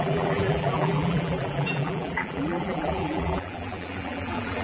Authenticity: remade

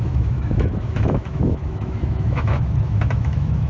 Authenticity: remade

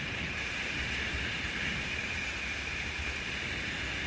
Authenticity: remade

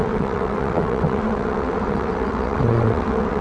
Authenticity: remade